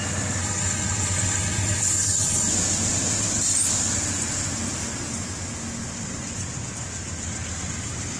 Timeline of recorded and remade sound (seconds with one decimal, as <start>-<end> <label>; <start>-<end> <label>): 0.0-0.4 recorded; 0.4-2.5 remade; 2.5-8.2 recorded